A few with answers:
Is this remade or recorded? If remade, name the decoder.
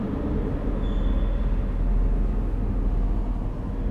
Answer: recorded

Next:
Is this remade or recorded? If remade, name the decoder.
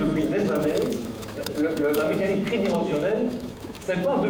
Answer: remade, autoencoder, DAC-VAE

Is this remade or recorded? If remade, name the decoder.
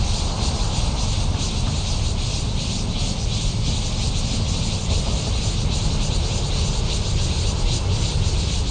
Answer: recorded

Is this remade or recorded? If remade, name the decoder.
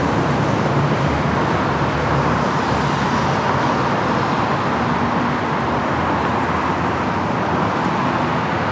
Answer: recorded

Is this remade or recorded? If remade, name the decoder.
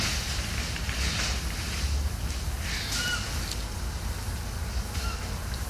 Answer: recorded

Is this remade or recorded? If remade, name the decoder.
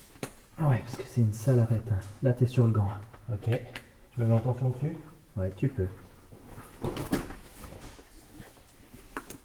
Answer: remade, autoencoder, DAC-VAE